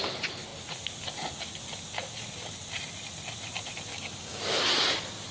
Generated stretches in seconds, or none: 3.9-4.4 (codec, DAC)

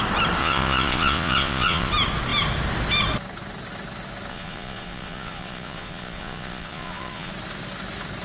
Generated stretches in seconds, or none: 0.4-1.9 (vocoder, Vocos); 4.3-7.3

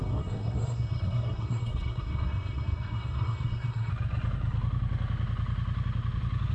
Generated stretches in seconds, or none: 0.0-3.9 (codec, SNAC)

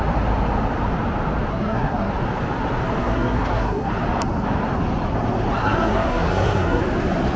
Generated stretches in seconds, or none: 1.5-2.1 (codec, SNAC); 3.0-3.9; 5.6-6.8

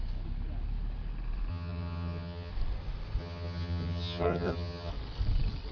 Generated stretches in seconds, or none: 1.5-2.5 (vocoder, HiFi-GAN); 3.2-4.9

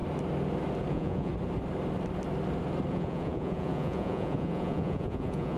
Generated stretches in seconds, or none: 0.9-1.3 (vocoder, Vocos); 2.9-5.6

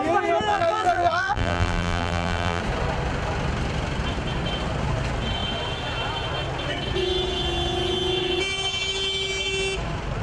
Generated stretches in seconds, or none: 0.5-2.6 (vocoder, BigVGAN v2)